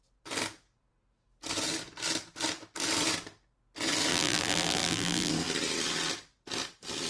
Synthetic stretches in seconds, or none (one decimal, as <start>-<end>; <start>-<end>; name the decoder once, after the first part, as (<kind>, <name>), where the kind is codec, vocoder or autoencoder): 4.1-5.3 (vocoder, BigVGAN v2)